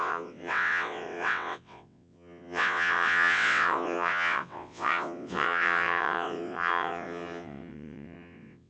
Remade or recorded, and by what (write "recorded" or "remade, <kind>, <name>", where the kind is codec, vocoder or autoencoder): remade, vocoder, WaveNeXt